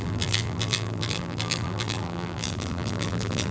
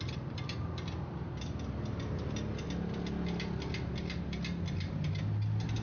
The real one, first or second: second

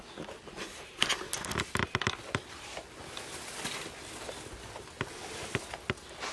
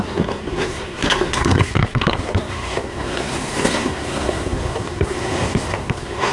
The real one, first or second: first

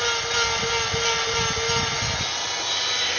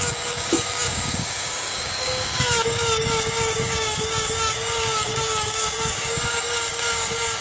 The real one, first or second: first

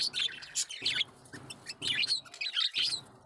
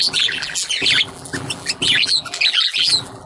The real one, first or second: first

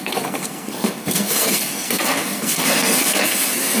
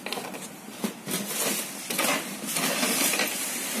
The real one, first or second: second